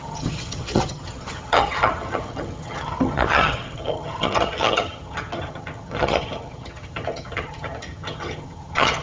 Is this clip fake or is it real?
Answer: fake